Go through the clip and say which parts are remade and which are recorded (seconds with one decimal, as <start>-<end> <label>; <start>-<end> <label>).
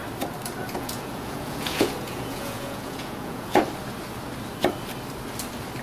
0.0-0.6 recorded; 0.6-3.6 remade; 3.6-5.8 recorded